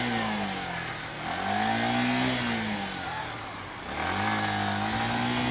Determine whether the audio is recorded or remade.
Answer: recorded